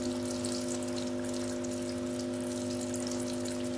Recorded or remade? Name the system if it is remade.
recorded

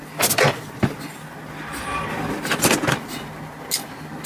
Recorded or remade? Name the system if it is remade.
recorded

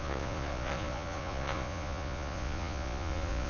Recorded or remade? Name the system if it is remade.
remade, vocoder, Vocos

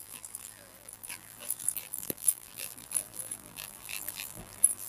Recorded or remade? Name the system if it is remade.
remade, vocoder, BigVGAN v2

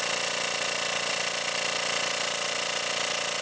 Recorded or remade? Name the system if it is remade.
recorded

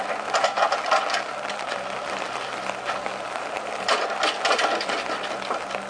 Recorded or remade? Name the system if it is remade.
recorded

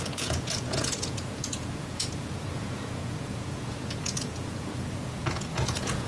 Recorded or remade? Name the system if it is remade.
remade, vocoder, Vocos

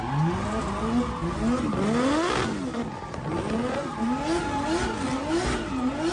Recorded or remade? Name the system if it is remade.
recorded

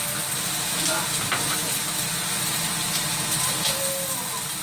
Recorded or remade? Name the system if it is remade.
recorded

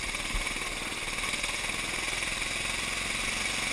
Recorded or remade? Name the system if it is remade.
recorded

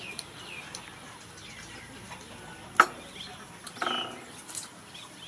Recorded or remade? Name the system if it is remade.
recorded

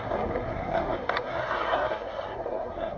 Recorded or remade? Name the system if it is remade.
remade, codec, SNAC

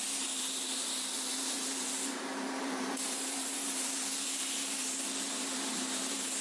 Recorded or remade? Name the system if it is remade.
remade, vocoder, BigVGAN v2